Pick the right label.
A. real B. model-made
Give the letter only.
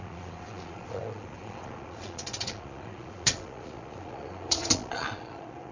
B